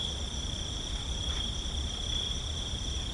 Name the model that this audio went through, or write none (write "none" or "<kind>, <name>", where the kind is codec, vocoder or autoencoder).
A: vocoder, BigVGAN v2